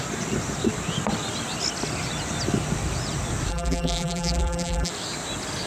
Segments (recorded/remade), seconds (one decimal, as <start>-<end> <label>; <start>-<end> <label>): 0.0-3.5 recorded; 3.5-4.9 remade; 4.9-5.7 recorded